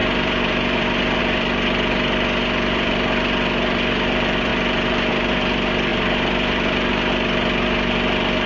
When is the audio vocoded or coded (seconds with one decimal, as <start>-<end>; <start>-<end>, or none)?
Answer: 0.0-4.5; 5.1-8.5